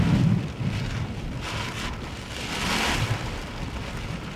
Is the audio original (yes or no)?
yes